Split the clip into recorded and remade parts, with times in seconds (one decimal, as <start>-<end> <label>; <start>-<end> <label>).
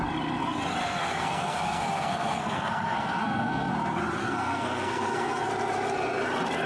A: 0.0-0.8 recorded; 0.8-3.7 remade; 3.7-4.2 recorded; 4.2-5.5 remade; 5.5-6.7 recorded